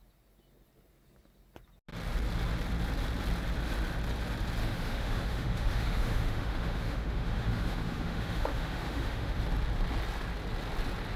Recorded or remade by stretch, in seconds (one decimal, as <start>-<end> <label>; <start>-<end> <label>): 0.0-4.6 recorded; 4.6-9.4 remade; 9.4-11.2 recorded